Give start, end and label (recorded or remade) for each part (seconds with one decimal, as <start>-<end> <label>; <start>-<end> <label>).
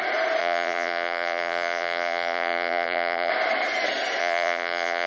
0.0-0.4 recorded; 0.4-3.3 remade; 3.3-4.2 recorded; 4.2-5.1 remade